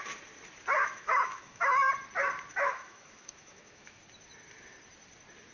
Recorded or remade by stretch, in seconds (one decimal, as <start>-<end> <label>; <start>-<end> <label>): 0.0-0.8 recorded; 0.8-1.7 remade; 1.7-2.5 recorded; 2.5-4.0 remade; 4.0-5.5 recorded

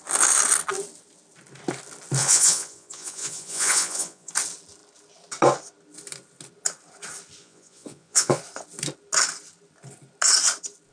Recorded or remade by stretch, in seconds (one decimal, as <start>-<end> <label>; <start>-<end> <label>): 0.0-2.2 recorded; 2.2-4.3 remade; 4.3-7.4 recorded; 7.4-8.4 remade; 8.4-10.9 recorded

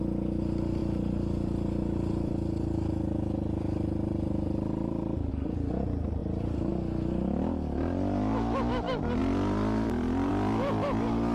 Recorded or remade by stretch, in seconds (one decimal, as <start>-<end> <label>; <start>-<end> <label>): 0.0-0.8 recorded; 0.8-5.3 remade; 5.3-6.2 recorded; 6.2-6.7 remade; 6.7-9.2 recorded; 9.2-10.3 remade; 10.3-11.3 recorded

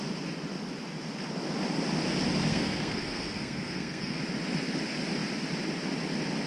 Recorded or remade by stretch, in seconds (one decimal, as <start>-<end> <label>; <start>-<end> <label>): 0.0-2.5 recorded; 2.5-4.2 remade; 4.2-6.5 recorded